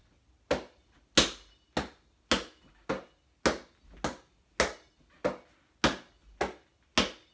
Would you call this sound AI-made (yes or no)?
no